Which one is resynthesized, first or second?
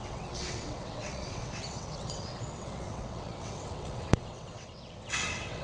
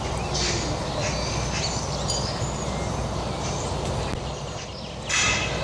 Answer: first